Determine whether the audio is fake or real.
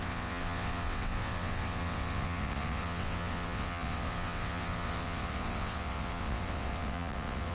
fake